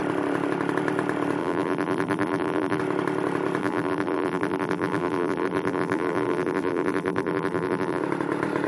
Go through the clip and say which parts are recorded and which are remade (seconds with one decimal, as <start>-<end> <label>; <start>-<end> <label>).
0.0-1.4 recorded; 1.4-2.8 remade; 2.8-3.6 recorded; 3.6-8.0 remade; 8.0-8.7 recorded